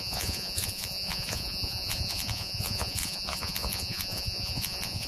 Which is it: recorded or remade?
remade